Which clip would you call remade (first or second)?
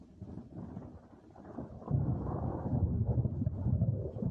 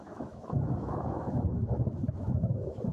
second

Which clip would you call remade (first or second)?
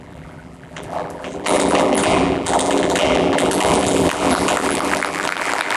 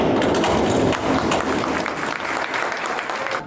first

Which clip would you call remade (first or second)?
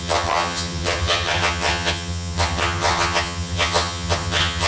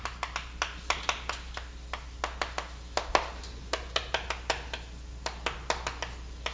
first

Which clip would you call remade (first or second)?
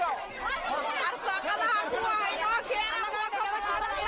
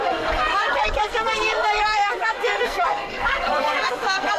second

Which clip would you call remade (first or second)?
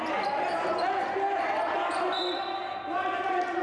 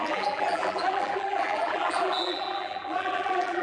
second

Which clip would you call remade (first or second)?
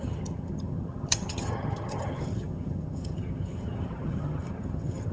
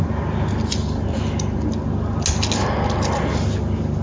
first